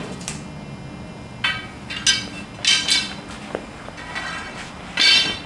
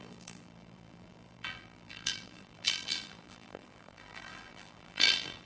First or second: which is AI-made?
second